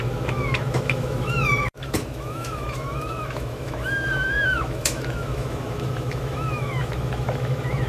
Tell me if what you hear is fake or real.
fake